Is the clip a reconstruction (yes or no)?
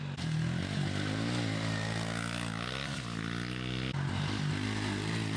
no